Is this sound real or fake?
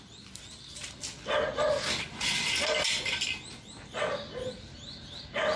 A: real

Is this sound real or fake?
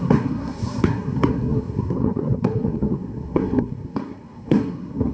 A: fake